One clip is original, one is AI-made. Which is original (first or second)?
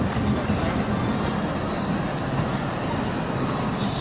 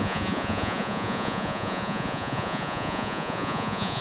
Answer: first